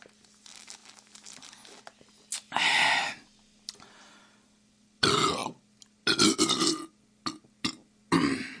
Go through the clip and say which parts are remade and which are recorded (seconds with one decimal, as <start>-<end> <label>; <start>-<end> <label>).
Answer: 0.0-8.6 recorded